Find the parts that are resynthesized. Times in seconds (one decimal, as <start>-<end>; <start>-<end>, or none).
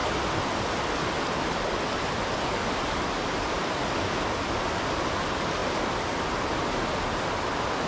none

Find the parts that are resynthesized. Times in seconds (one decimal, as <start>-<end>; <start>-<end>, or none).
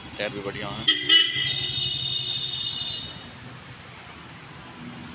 none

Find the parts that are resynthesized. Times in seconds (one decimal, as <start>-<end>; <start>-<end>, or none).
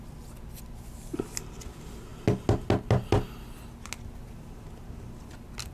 none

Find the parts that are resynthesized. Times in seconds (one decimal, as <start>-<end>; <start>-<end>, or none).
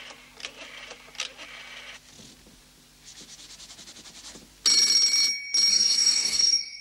5.7-6.8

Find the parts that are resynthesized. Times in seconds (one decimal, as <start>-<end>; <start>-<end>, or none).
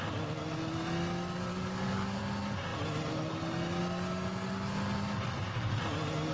1.5-2.2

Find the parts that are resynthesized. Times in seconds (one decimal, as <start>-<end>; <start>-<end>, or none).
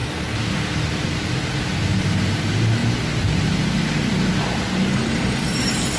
4.9-6.0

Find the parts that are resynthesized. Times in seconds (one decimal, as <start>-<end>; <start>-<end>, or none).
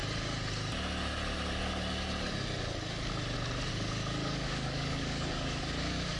3.7-6.2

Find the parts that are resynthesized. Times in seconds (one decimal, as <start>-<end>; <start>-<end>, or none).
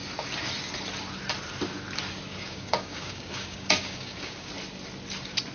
2.3-4.5